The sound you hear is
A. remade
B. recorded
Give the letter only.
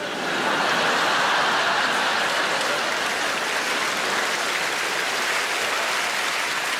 B